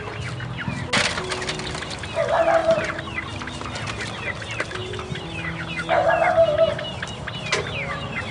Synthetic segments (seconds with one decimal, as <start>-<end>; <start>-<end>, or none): none